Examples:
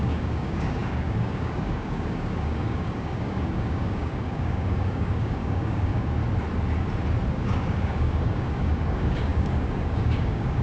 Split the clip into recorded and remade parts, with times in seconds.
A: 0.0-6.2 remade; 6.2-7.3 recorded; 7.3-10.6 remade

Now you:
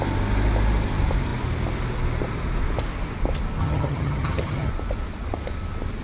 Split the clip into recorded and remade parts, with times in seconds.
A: 0.0-3.6 recorded; 3.6-4.7 remade; 4.7-6.0 recorded